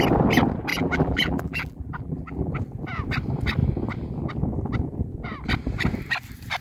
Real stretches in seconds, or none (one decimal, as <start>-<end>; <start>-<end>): 0.0-0.7; 2.5-6.6